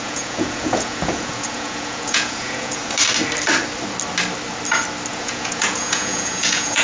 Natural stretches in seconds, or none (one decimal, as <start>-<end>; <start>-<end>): 2.8-5.1